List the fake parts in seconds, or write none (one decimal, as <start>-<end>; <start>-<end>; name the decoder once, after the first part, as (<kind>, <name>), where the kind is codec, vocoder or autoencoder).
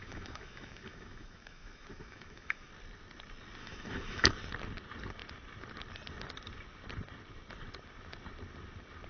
0.0-2.7 (autoencoder, DAC-VAE); 3.6-4.3